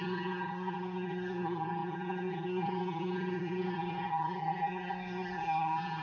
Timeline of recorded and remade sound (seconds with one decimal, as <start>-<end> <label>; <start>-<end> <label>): 0.0-6.0 remade